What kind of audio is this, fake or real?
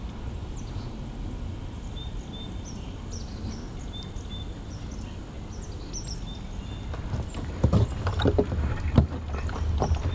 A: real